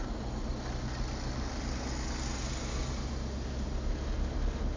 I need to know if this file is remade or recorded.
recorded